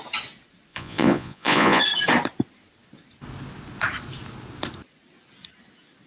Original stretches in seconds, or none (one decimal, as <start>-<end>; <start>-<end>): 0.0-0.7; 1.8-6.1